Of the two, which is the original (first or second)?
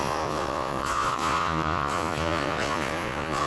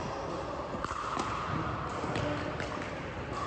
second